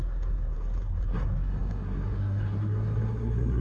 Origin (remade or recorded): remade